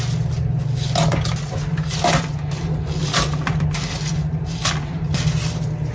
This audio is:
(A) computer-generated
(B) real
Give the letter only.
B